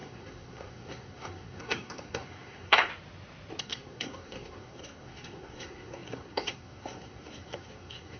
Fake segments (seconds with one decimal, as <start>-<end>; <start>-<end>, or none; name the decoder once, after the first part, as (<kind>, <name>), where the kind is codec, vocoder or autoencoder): 0.0-2.9 (codec, SNAC); 3.6-8.2